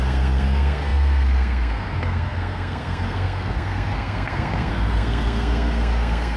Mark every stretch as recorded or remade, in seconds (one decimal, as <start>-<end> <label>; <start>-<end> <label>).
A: 0.0-6.4 remade